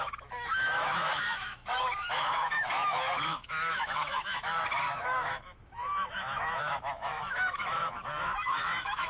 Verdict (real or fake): fake